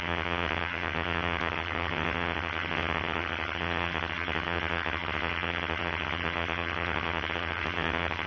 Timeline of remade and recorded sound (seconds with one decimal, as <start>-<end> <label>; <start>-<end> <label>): 0.0-8.3 remade